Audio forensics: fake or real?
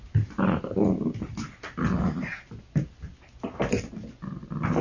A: real